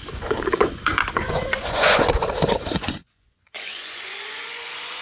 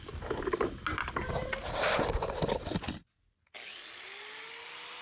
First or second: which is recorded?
second